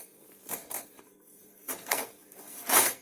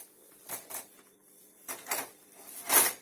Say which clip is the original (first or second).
second